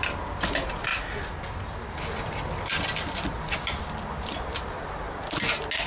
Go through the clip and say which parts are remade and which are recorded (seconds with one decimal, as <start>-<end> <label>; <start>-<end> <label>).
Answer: 0.0-5.9 recorded